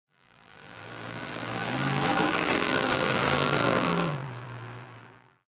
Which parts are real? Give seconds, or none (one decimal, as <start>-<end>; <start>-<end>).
none